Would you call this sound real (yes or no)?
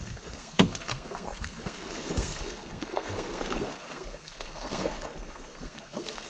no